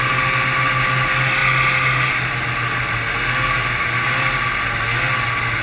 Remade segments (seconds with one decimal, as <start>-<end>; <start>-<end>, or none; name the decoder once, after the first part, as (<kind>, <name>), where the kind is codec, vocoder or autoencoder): none